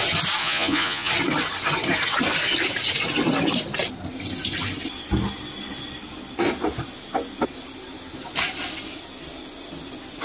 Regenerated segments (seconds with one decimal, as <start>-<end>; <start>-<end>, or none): 0.4-1.1